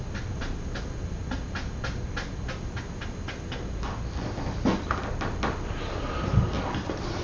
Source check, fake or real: real